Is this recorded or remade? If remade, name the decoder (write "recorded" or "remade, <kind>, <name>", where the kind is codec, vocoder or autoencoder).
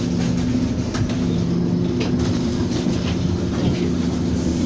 recorded